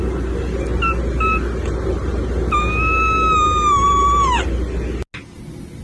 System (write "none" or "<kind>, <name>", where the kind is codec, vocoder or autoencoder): none